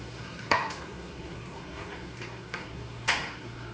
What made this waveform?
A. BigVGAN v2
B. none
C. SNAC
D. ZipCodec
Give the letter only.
C